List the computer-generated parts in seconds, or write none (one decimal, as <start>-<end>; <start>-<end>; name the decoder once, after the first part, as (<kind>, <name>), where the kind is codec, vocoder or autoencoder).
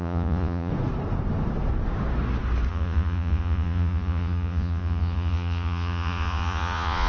0.0-0.7 (vocoder, Vocos); 2.7-7.1